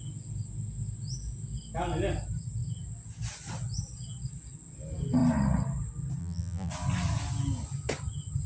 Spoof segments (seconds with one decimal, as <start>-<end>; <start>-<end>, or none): 6.2-6.7